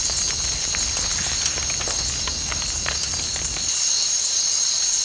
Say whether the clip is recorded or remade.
recorded